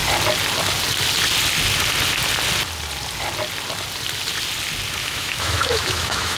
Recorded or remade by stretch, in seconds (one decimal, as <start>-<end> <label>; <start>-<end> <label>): 0.0-5.0 recorded; 5.0-6.4 remade